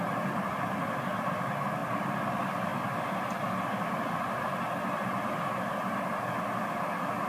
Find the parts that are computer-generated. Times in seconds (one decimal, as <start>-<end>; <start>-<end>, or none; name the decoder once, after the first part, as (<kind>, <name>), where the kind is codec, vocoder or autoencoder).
none